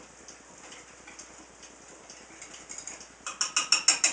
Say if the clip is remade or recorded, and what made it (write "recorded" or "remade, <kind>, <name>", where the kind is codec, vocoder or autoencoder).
recorded